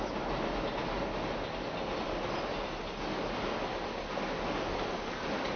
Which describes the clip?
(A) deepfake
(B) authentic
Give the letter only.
B